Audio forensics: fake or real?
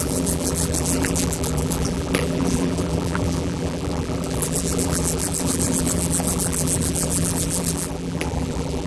fake